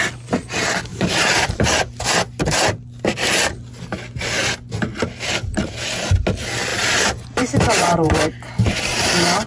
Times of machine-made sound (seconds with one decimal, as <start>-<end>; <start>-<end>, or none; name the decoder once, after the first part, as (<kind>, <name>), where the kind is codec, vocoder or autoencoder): 0.9-2.1 (vocoder, BigVGAN v2); 6.7-8.2